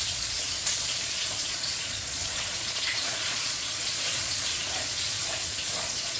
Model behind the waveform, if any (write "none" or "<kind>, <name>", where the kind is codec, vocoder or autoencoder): vocoder, Vocos